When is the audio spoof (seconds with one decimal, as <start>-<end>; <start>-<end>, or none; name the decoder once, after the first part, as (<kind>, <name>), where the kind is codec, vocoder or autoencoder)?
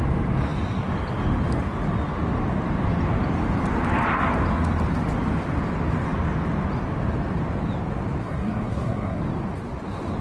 8.2-9.2 (codec, SNAC)